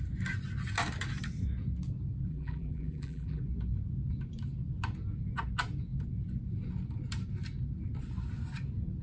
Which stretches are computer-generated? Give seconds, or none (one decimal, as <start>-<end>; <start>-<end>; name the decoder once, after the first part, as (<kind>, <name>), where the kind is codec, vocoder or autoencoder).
2.3-3.4 (vocoder, BigVGAN v2)